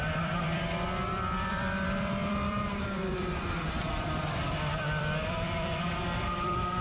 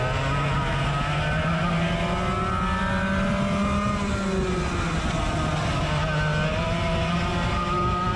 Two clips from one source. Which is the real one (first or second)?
second